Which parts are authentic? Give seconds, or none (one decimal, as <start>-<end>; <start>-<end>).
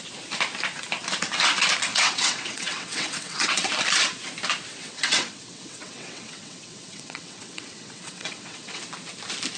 0.0-1.9; 3.7-4.7; 8.8-9.6